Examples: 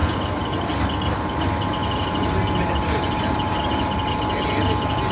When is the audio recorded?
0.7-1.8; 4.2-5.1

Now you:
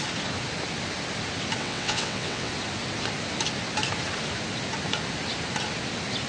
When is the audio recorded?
0.0-1.6; 2.5-6.3